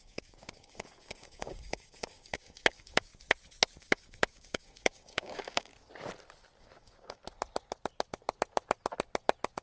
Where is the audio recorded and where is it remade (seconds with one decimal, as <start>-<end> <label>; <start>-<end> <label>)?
0.0-3.1 remade; 3.1-3.8 recorded; 3.8-5.7 remade; 5.7-6.6 recorded; 6.6-7.2 remade; 7.2-9.6 recorded